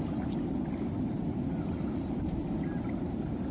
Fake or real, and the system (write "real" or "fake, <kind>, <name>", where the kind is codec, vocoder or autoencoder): real